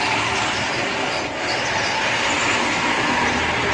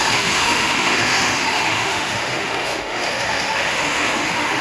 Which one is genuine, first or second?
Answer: first